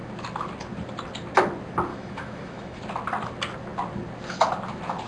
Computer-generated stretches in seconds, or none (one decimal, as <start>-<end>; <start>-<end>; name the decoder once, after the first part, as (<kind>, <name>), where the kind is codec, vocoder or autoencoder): 1.9-2.8 (autoencoder, DAC-VAE)